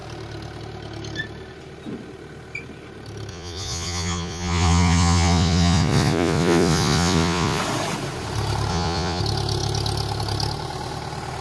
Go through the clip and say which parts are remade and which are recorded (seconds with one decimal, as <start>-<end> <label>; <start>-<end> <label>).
0.0-3.3 recorded; 3.3-7.6 remade; 7.6-8.7 recorded; 8.7-9.2 remade; 9.2-11.4 recorded